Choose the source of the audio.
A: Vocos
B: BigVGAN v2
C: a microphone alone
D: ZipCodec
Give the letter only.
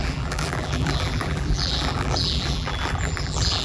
B